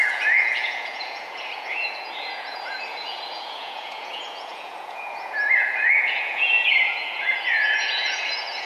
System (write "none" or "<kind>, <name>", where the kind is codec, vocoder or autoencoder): vocoder, Vocos